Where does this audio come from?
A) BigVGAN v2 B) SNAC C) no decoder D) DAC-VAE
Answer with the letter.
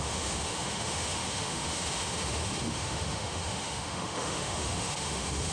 D